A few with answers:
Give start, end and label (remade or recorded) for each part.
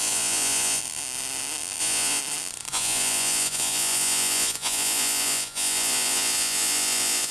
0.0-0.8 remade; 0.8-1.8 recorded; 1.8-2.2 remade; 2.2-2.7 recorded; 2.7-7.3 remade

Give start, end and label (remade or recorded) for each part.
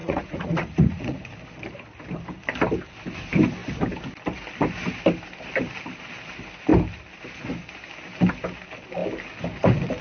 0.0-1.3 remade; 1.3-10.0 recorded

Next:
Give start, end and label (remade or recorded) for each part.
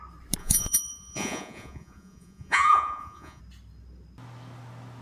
0.0-0.4 recorded; 0.4-3.4 remade; 3.4-5.0 recorded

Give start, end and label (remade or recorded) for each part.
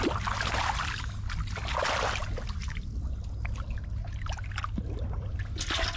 0.0-6.0 recorded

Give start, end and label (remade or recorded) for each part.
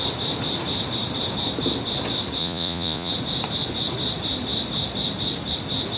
0.0-2.4 recorded; 2.4-3.1 remade; 3.1-6.0 recorded